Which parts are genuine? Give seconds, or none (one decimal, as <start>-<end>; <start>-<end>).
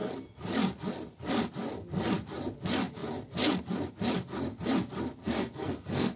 0.0-5.2